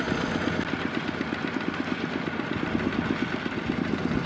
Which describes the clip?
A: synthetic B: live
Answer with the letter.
B